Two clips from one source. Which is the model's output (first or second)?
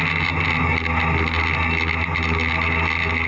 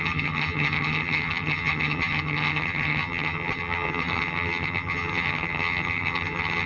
second